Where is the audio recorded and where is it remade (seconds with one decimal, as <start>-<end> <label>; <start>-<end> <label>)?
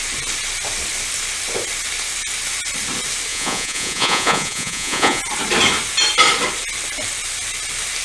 0.0-3.3 recorded; 3.3-5.2 remade; 5.2-8.0 recorded